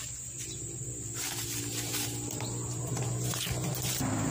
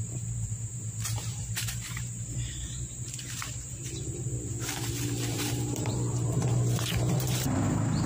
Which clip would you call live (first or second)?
first